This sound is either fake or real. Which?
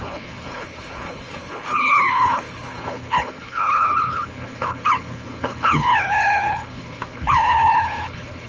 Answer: fake